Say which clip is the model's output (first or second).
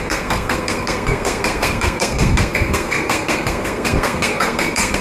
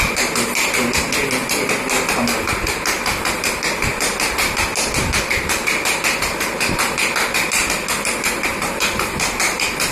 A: first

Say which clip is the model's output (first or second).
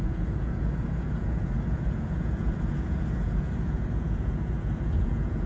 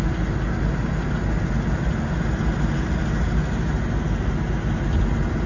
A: first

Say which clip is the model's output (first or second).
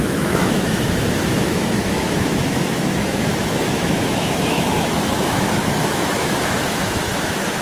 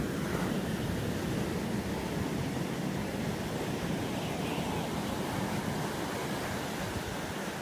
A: first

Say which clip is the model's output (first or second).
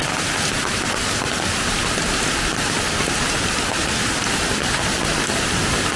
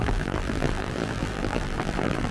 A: second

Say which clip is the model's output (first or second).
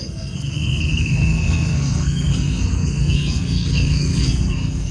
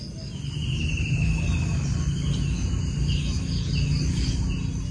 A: first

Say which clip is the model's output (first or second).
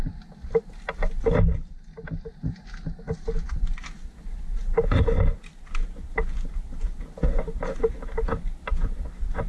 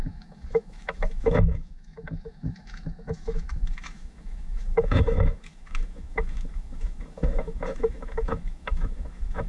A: second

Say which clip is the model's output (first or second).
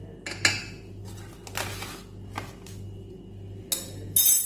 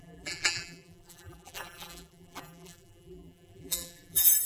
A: second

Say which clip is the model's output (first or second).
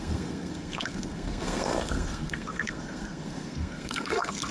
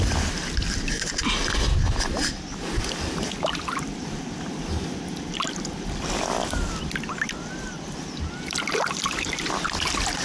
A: first